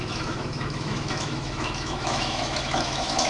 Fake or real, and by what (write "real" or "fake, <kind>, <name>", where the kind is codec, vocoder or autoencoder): fake, autoencoder, DAC-VAE